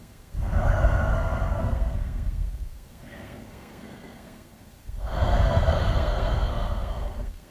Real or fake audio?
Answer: fake